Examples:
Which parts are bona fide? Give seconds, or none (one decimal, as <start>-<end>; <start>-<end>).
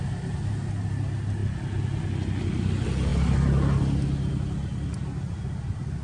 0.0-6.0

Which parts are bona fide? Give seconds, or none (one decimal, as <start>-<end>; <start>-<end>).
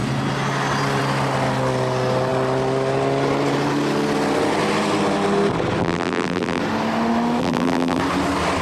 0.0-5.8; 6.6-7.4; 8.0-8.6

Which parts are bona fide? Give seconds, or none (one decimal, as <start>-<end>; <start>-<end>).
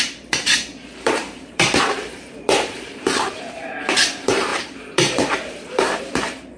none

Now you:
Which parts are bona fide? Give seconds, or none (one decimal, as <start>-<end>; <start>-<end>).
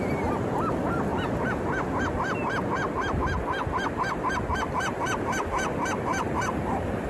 0.0-6.1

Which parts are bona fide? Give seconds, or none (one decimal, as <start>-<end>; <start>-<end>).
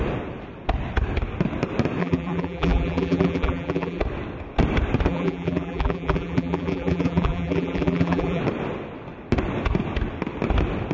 0.0-2.0; 4.0-5.1; 8.4-10.9